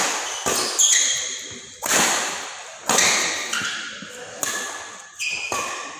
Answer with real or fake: real